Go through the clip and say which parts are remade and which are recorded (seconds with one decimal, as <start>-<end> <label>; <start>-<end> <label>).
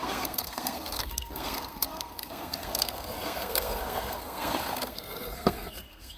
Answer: 0.0-6.2 remade